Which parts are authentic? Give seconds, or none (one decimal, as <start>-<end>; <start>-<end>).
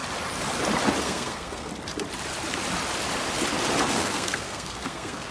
0.0-1.0; 1.7-3.9